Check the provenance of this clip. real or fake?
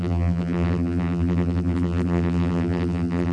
fake